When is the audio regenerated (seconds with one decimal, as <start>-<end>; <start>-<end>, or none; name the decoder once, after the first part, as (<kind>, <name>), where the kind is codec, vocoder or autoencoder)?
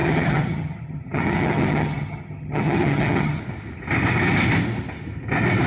0.0-3.4 (vocoder, HiFi-GAN)